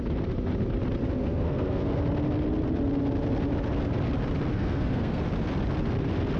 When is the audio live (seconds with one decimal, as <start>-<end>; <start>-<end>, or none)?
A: 0.0-1.2; 2.0-4.5; 5.2-6.4